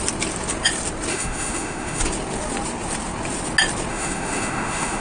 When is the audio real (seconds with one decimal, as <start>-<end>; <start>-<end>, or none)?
0.0-1.1; 2.0-3.9

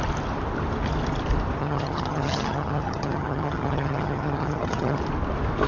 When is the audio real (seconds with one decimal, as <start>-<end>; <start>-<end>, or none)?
0.0-1.6; 5.0-5.7

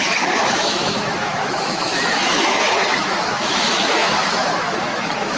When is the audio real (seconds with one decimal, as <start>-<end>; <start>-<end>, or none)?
none

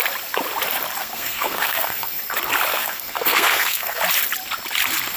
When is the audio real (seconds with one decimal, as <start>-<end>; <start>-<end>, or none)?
0.0-1.0; 2.2-2.7; 4.0-5.2

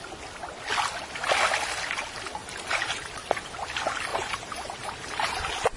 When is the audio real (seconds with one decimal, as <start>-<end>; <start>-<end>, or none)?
0.0-2.4; 3.1-4.1

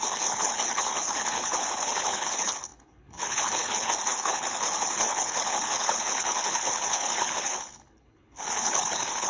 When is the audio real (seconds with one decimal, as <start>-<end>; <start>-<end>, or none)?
none